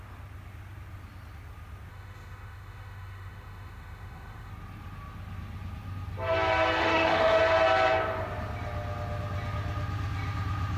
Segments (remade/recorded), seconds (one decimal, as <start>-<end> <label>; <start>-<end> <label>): 0.0-1.9 recorded; 1.9-4.5 remade; 4.5-6.8 recorded; 6.8-7.4 remade; 7.4-10.8 recorded

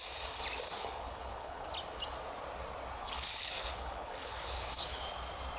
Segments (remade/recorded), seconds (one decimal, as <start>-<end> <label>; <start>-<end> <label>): 0.0-0.8 recorded; 0.8-1.7 remade; 1.7-3.0 recorded; 3.0-5.0 remade; 5.0-5.6 recorded

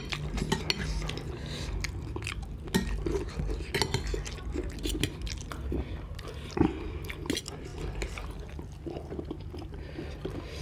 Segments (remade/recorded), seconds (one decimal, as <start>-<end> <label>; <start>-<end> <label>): 0.0-10.6 recorded

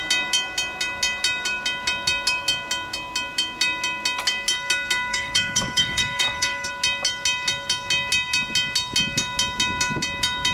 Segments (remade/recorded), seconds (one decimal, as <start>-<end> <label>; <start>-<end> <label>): 0.0-5.1 recorded; 5.1-6.7 remade; 6.7-10.5 recorded

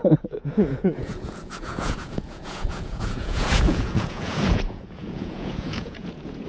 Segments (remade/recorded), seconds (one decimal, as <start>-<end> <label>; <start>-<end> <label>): 0.0-6.5 remade

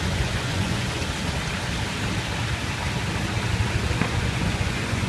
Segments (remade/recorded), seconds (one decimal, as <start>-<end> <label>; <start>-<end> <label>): 0.0-1.0 remade; 1.0-4.1 recorded; 4.1-5.1 remade